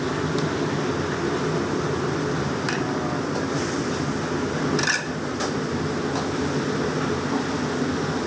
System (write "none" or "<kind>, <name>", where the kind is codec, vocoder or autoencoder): none